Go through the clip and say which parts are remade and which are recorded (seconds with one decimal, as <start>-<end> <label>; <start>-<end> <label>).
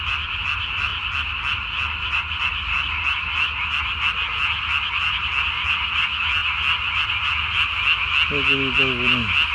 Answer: 0.0-9.5 recorded